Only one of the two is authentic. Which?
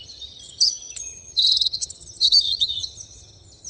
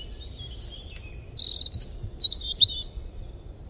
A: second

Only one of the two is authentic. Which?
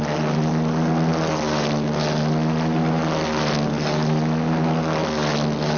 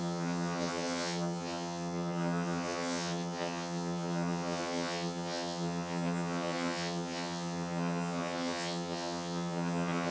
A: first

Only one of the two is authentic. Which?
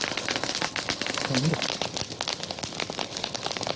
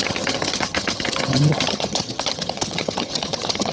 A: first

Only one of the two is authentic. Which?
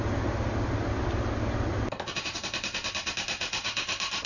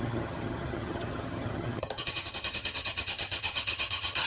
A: first